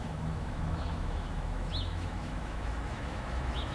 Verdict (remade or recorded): remade